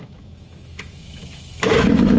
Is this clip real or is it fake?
fake